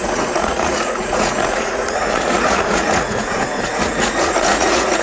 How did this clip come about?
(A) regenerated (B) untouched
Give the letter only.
A